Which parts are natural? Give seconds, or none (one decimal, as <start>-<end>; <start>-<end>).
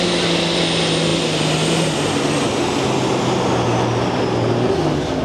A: 0.0-5.2